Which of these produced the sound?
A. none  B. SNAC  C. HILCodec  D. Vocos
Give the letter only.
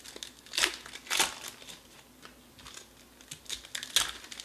A